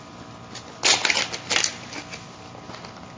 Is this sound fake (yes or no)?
no